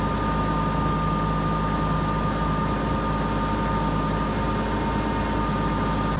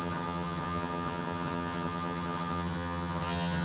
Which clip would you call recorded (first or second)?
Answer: first